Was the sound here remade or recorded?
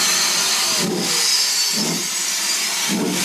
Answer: recorded